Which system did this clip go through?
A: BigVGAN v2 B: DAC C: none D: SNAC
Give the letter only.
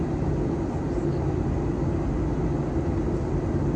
C